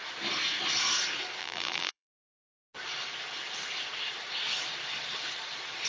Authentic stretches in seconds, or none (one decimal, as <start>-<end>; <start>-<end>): 0.0-1.4; 2.6-5.9